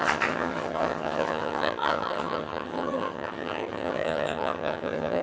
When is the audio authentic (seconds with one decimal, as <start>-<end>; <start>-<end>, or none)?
none